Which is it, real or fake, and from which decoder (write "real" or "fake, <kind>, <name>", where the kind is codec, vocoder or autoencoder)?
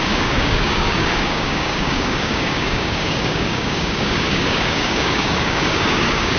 fake, codec, DAC